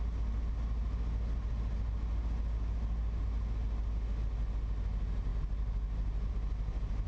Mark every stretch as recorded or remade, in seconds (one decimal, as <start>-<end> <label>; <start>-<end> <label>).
0.0-7.1 recorded